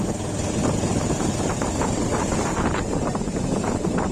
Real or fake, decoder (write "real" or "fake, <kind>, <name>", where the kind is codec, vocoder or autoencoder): fake, vocoder, BigVGAN v2